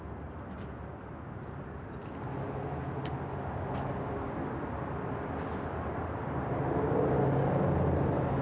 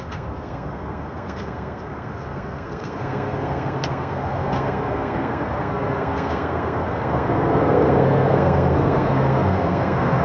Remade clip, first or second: second